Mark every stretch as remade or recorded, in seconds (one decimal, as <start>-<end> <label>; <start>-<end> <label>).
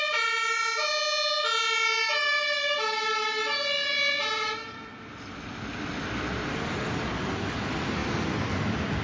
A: 0.0-9.0 recorded